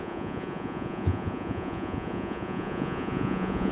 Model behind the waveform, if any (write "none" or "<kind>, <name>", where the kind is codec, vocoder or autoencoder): vocoder, Vocos